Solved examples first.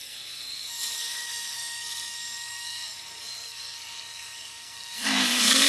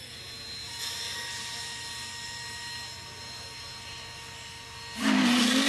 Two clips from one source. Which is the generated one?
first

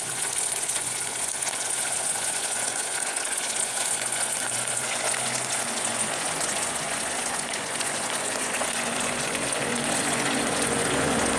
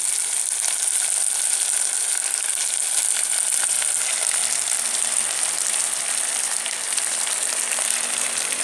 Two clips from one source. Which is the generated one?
first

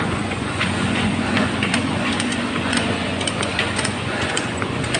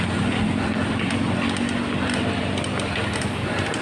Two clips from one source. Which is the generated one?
first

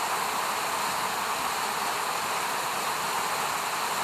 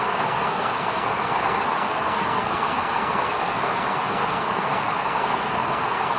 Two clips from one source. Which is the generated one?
second